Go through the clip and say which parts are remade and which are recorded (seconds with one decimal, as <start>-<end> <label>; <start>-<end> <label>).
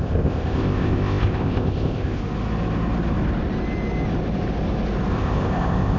0.0-2.2 remade; 2.2-5.1 recorded; 5.1-6.0 remade